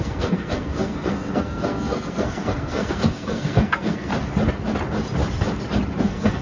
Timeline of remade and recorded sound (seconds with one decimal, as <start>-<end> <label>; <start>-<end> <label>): 0.0-4.1 remade; 4.1-6.0 recorded; 6.0-6.4 remade